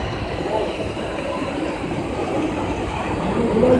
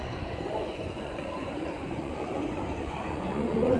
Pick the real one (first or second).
first